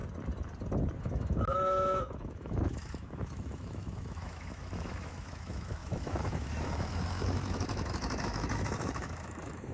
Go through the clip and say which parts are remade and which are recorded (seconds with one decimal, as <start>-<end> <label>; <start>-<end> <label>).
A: 0.0-1.0 recorded; 1.0-9.7 remade